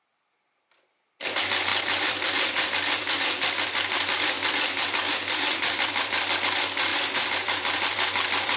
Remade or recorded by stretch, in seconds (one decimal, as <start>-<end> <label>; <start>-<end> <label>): 0.0-1.7 recorded; 1.7-6.4 remade; 6.4-6.9 recorded; 6.9-8.6 remade